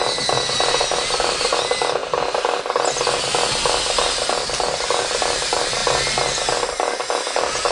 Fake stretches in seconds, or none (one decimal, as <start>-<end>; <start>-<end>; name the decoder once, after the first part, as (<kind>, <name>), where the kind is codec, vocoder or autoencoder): none